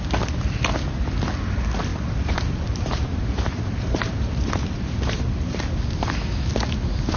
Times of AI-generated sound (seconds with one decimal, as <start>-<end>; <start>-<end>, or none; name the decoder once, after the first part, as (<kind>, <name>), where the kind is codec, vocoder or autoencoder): 1.9-5.6 (vocoder, BigVGAN v2)